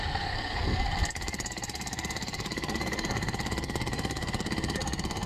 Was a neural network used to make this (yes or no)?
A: yes